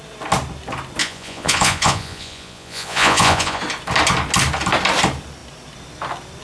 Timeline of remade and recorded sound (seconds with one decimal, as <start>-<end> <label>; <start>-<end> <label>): 0.0-1.0 recorded; 1.0-3.6 remade; 3.6-6.4 recorded